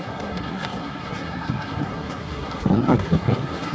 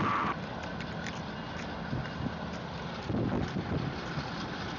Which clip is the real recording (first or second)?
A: second